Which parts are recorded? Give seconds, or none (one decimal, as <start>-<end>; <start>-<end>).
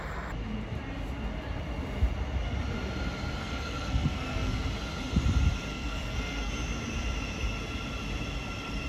0.0-3.4; 4.6-5.7; 6.5-8.9